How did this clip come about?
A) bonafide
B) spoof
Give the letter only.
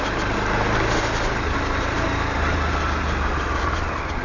A